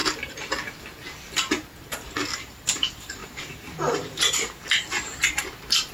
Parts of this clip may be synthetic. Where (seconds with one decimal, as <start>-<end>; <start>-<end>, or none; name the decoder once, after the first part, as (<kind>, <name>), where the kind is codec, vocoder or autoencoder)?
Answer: 2.4-5.9 (vocoder, BigVGAN v2)